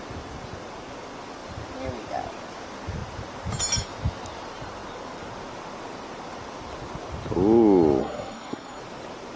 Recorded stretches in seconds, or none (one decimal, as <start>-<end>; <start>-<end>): 0.0-8.0; 8.8-9.4